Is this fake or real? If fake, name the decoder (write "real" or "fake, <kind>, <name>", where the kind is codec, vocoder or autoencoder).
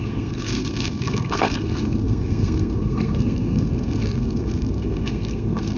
fake, codec, SNAC